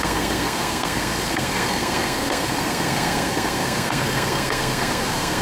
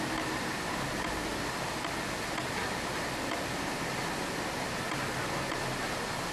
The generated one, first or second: first